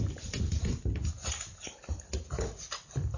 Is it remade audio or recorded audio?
recorded